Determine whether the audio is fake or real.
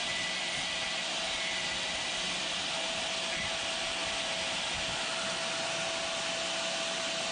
real